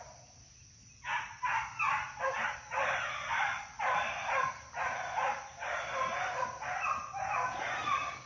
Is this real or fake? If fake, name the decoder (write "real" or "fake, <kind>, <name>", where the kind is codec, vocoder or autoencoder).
real